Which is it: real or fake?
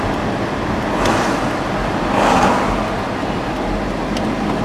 real